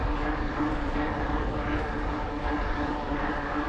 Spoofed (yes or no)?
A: yes